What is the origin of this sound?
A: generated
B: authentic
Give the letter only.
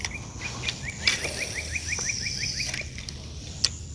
B